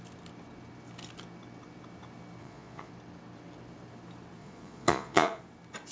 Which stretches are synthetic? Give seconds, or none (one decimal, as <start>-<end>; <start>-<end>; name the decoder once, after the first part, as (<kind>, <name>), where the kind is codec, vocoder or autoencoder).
2.4-2.9 (vocoder, Vocos); 4.4-5.4

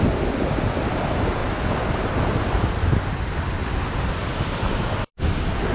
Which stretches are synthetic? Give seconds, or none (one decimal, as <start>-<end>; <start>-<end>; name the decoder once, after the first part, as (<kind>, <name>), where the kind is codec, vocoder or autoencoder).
none